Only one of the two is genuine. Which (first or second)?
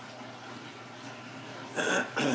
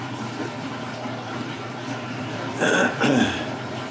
first